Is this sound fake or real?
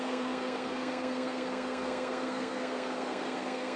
fake